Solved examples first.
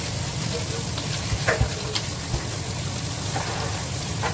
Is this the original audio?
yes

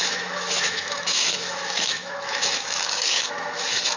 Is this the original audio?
no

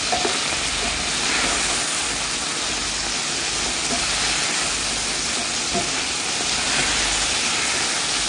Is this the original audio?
yes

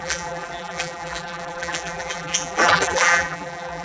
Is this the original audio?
no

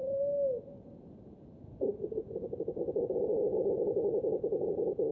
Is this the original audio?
yes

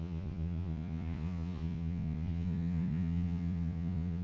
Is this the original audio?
no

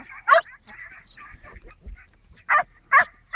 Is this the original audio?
yes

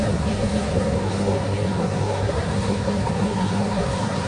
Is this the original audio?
no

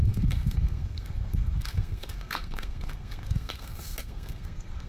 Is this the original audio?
no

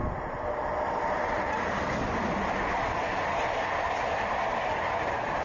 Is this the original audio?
yes